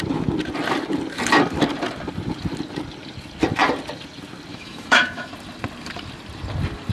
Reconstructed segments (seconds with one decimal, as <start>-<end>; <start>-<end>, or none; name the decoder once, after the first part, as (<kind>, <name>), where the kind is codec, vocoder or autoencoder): 4.5-5.3 (autoencoder, DAC-VAE)